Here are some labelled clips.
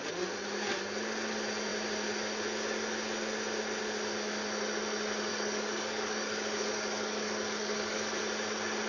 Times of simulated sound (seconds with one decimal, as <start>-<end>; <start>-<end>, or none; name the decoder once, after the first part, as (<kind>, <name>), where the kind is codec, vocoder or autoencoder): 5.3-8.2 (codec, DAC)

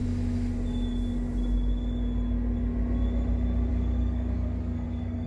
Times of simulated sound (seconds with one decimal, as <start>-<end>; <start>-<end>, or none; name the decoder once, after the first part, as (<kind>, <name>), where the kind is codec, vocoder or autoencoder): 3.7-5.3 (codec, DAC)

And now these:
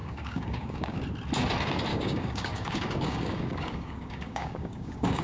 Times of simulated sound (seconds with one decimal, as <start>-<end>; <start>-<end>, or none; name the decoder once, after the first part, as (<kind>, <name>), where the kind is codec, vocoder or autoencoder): 0.0-1.0 (codec, DAC); 1.9-5.2

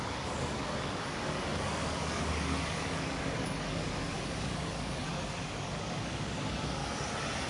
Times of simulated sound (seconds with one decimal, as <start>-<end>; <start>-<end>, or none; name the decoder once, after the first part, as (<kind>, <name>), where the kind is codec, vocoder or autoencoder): 0.0-6.8 (codec, DAC)

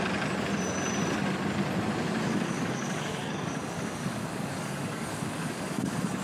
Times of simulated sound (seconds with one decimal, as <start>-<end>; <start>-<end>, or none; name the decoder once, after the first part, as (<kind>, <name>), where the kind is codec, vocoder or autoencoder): 2.3-6.2 (codec, DAC)

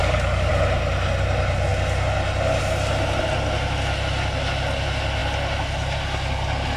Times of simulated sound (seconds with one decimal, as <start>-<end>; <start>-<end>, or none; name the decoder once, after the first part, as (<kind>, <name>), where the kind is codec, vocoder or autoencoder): 0.0-0.5 (codec, DAC)

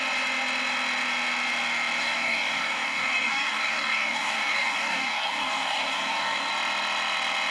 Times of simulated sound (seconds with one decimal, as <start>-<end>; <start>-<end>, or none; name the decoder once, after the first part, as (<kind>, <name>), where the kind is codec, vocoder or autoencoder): 2.0-6.5 (codec, DAC)

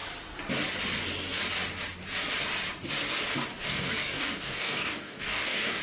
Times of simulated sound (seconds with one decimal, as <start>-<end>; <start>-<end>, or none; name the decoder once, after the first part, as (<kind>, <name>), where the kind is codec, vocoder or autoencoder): 3.5-5.8 (codec, DAC)